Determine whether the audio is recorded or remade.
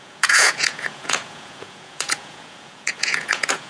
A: remade